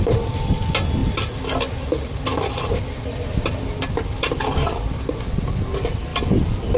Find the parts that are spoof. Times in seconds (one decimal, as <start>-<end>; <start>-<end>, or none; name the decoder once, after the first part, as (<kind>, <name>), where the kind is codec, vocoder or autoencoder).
1.0-5.1 (vocoder, BigVGAN v2); 6.1-6.8